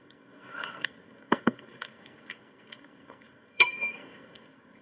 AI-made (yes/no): yes